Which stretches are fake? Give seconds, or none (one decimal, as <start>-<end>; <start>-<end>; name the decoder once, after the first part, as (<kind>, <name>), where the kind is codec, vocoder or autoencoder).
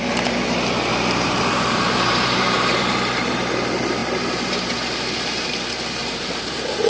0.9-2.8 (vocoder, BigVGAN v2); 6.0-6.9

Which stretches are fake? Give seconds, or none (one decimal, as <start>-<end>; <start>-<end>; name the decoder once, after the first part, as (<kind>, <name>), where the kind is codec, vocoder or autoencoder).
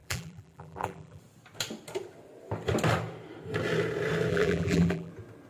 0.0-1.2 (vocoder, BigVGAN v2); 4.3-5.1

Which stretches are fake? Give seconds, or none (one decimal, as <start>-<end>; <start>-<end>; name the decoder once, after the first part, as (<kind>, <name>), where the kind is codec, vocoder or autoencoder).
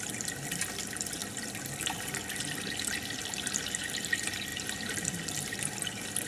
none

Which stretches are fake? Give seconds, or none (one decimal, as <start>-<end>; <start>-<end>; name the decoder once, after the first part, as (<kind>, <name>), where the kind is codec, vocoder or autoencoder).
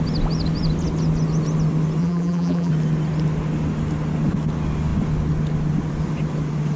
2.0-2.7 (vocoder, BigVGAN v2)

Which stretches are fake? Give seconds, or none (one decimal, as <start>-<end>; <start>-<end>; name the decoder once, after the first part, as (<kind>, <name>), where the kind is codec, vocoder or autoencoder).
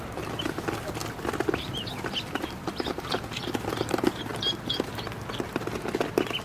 1.0-3.4 (vocoder, BigVGAN v2)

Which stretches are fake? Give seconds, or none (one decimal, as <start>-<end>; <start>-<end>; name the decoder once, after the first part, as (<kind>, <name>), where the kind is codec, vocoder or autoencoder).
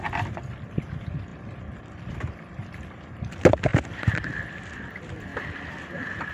0.0-1.3 (vocoder, BigVGAN v2); 1.8-5.3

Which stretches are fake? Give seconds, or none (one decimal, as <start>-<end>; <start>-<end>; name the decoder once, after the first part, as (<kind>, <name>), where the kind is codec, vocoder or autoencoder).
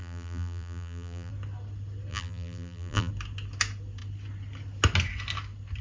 0.0-1.3 (vocoder, BigVGAN v2); 2.1-3.1